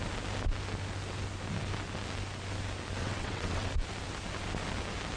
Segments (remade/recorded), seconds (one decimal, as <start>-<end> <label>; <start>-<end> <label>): 0.0-3.0 recorded; 3.0-3.7 remade; 3.7-5.2 recorded